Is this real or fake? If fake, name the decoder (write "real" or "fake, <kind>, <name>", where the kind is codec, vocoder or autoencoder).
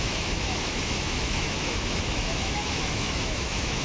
fake, autoencoder, DAC-VAE